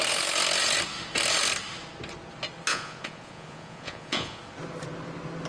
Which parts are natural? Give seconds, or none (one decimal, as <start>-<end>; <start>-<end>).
0.0-2.7; 4.4-5.5